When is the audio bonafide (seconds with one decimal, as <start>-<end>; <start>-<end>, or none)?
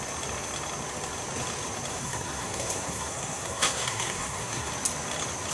0.0-1.9; 4.7-5.5